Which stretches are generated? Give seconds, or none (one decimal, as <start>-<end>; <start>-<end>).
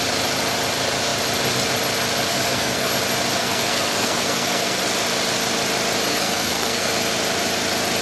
2.3-2.9; 3.4-4.8; 6.1-6.9